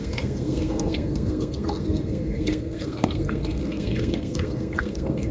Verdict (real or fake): fake